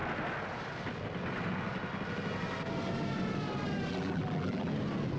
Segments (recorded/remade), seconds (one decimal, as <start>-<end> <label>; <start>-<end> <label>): 0.0-3.9 recorded; 3.9-4.7 remade; 4.7-5.2 recorded